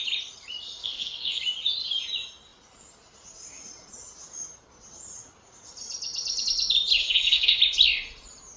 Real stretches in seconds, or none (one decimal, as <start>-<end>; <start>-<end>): 0.0-0.8; 1.4-7.0; 7.6-8.6